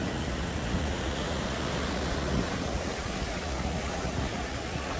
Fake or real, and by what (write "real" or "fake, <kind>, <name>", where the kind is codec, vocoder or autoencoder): fake, vocoder, Vocos